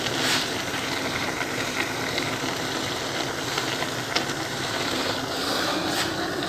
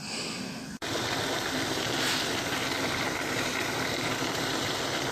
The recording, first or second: first